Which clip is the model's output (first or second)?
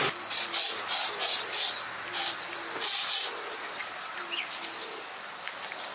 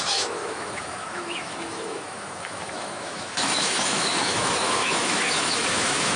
second